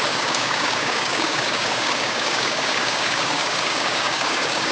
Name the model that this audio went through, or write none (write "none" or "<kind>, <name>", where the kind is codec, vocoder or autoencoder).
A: codec, DAC